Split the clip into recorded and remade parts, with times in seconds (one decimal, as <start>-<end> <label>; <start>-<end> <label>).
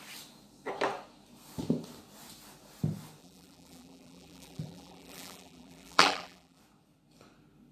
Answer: 0.0-3.2 recorded; 3.2-6.6 remade; 6.6-7.7 recorded